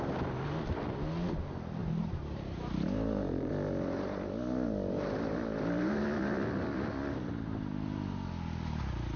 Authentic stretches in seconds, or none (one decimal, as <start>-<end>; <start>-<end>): 0.0-1.8; 3.5-9.2